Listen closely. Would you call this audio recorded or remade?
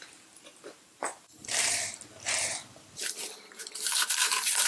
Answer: remade